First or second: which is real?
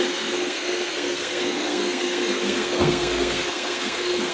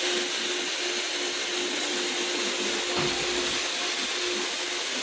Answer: second